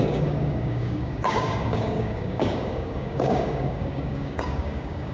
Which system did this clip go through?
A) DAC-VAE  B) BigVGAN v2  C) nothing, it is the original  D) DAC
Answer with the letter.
D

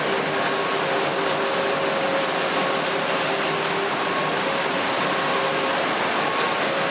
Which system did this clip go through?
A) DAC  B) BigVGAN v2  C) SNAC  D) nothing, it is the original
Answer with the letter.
D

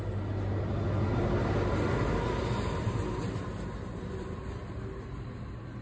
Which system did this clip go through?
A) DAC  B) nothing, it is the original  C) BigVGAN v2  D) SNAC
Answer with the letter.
B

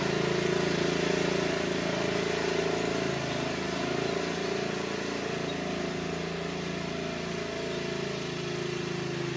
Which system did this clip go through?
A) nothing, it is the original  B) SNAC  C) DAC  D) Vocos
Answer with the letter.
A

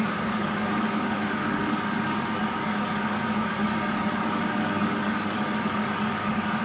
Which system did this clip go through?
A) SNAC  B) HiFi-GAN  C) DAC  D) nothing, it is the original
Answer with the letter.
C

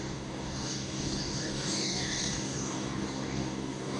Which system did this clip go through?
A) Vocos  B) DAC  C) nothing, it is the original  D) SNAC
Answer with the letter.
B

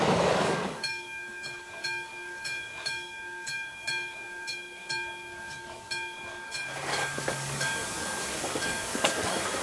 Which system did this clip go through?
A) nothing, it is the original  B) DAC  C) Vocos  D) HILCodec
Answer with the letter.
B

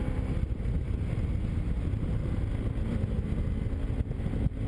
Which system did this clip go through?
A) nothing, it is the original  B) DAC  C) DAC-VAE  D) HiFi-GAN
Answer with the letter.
A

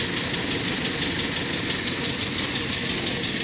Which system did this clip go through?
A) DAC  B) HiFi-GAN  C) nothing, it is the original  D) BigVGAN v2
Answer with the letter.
C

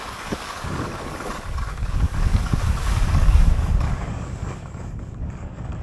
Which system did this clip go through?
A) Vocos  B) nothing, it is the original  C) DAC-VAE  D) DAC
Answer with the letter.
D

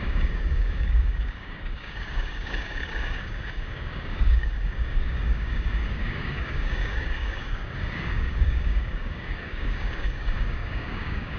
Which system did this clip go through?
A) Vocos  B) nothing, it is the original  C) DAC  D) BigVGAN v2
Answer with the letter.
C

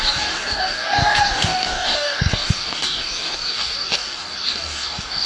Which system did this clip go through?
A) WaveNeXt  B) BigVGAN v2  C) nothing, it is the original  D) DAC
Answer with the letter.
D